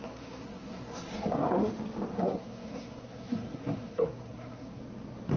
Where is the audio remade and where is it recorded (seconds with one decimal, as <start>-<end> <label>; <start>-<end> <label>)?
0.0-1.7 remade; 1.7-2.1 recorded; 2.1-4.8 remade; 4.8-5.4 recorded